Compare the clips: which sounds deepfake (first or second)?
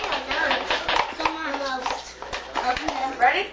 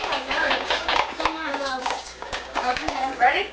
second